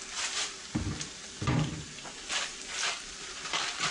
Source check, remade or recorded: remade